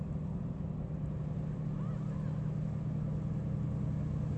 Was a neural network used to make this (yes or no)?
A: no